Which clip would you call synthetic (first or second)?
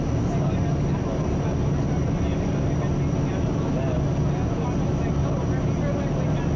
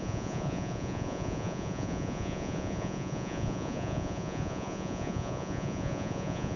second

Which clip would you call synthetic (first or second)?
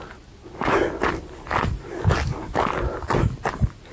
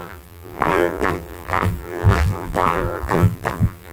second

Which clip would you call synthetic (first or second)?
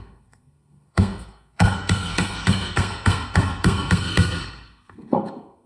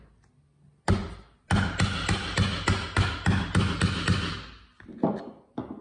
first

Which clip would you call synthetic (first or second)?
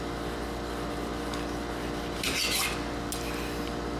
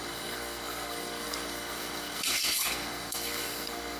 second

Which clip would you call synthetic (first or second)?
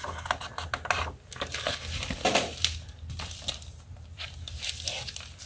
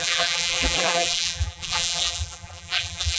second